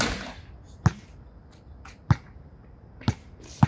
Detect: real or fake real